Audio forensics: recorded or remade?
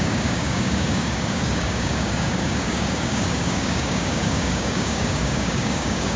remade